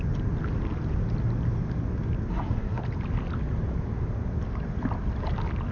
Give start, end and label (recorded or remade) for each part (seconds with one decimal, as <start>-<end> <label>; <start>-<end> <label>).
0.0-2.3 recorded; 2.3-2.8 remade; 2.8-5.7 recorded